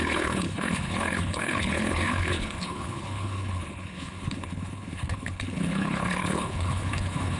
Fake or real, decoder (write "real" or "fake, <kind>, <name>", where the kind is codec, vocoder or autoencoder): fake, codec, HILCodec